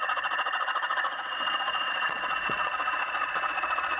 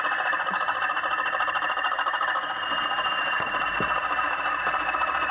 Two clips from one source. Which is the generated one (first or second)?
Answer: first